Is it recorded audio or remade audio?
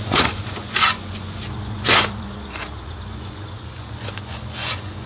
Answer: remade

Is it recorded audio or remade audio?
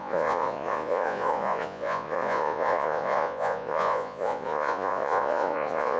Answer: remade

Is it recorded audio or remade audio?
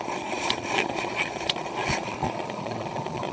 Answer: remade